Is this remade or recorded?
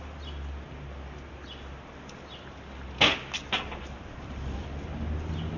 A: recorded